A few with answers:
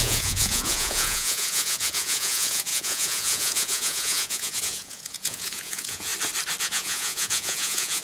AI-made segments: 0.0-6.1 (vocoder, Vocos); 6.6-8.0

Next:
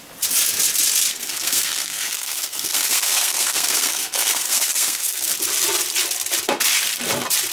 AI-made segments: 1.1-5.3 (codec, SNAC)

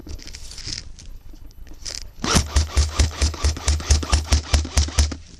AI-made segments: 0.0-0.6 (codec, HILCodec); 1.1-4.3

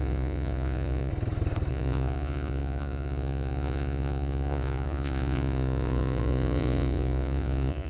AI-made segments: 0.0-1.1 (vocoder, Vocos); 1.7-7.9

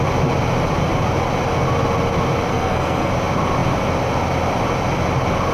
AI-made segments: 2.5-3.1 (codec, SNAC)

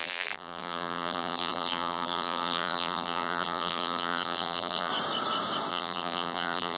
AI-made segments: 0.0-4.9 (vocoder, BigVGAN v2); 5.7-6.8

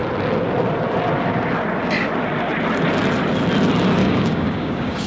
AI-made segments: 4.0-5.1 (codec, DAC)

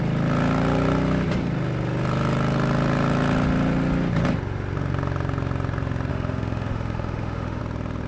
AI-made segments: 6.1-7.6 (autoencoder, DAC-VAE)